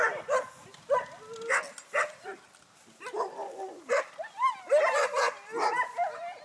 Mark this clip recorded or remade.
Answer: recorded